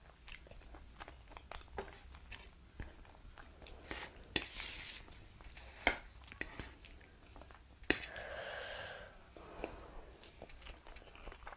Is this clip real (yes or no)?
yes